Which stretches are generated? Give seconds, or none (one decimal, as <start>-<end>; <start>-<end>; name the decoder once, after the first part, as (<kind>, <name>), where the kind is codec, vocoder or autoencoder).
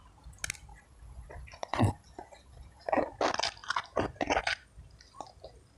0.7-3.1 (vocoder, Vocos)